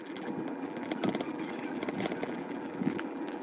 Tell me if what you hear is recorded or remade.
remade